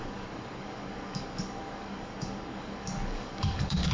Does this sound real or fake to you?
fake